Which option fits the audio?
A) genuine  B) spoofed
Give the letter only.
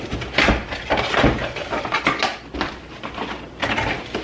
A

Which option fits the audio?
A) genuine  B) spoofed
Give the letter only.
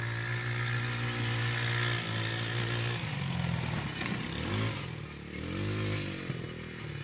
A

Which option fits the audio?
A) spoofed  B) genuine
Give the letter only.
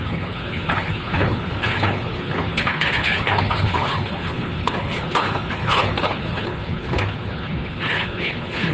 A